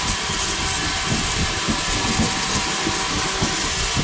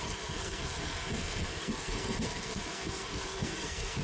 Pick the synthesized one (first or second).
second